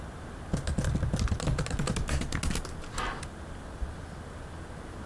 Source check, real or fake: real